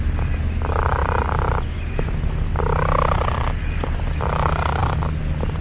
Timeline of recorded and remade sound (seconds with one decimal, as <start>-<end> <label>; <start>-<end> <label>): 0.0-5.6 recorded